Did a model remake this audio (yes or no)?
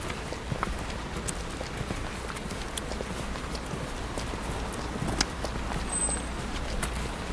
no